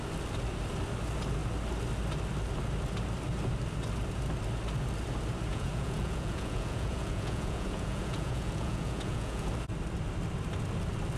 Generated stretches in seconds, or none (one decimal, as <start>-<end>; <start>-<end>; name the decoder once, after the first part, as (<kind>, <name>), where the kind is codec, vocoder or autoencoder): 5.5-9.5 (vocoder, Vocos)